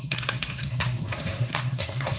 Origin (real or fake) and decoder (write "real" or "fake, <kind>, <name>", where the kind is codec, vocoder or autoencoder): fake, codec, SNAC